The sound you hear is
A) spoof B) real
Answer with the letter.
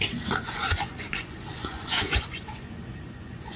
A